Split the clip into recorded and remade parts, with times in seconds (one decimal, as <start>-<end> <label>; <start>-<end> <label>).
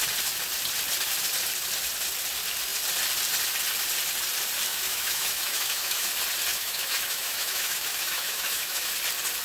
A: 0.0-4.7 recorded; 4.7-6.1 remade; 6.1-6.5 recorded; 6.5-8.9 remade; 8.9-9.4 recorded